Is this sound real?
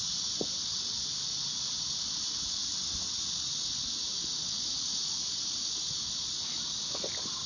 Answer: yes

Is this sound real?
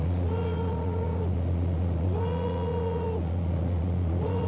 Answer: no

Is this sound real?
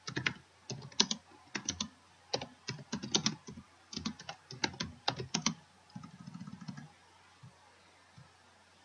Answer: yes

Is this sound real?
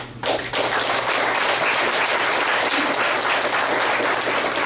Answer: yes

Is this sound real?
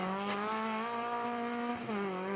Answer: yes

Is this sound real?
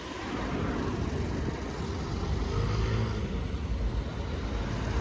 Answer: yes